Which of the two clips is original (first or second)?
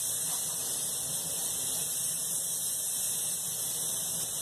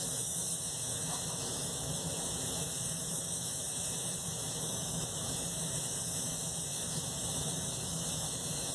first